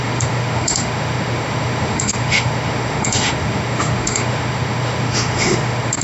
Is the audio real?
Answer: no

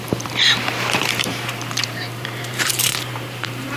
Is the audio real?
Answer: no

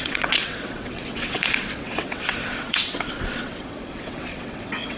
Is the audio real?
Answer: no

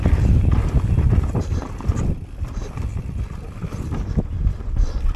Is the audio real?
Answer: yes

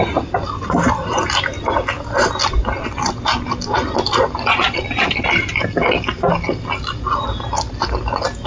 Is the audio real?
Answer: yes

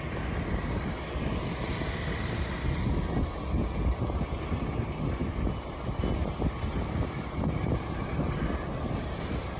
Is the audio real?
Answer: yes